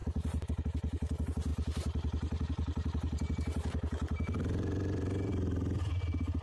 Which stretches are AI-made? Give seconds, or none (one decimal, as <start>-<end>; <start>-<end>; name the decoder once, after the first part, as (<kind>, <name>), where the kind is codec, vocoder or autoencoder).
0.0-0.6 (vocoder, BigVGAN v2); 1.5-5.3